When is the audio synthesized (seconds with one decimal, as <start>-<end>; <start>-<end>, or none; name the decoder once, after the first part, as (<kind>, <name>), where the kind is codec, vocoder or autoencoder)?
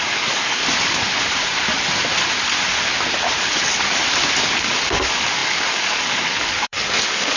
0.0-0.6 (codec, DAC); 4.6-7.4